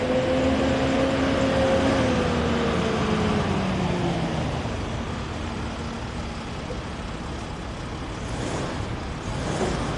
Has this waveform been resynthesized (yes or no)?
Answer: no